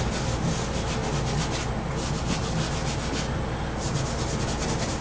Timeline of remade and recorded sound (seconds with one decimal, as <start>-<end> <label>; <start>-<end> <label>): 0.0-5.0 recorded